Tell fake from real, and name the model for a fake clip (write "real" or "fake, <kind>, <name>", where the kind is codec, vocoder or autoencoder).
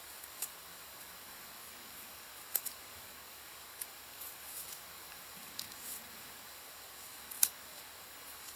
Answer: fake, codec, DAC